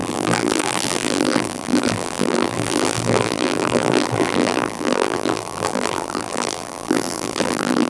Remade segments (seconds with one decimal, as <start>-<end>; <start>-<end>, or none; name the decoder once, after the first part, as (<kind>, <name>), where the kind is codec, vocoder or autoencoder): 0.0-7.9 (vocoder, BigVGAN v2)